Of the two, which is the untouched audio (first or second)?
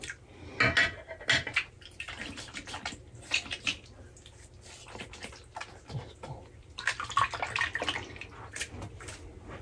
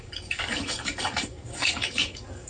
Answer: first